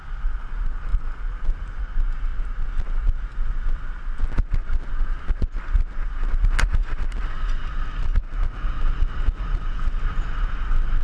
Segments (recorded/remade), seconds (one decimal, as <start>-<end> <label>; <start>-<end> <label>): 0.0-11.0 recorded